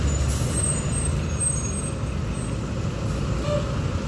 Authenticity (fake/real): real